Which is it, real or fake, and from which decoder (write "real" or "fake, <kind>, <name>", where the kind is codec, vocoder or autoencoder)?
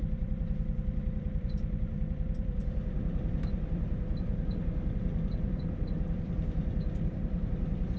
fake, vocoder, BigVGAN v2